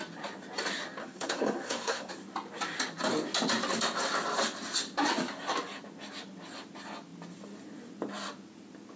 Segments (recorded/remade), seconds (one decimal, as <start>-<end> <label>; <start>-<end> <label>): 0.0-1.0 recorded; 1.0-2.1 remade; 2.1-9.0 recorded